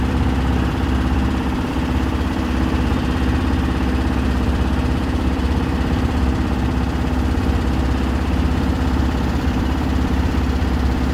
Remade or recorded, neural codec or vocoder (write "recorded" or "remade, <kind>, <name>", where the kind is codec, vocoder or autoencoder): remade, vocoder, BigVGAN v2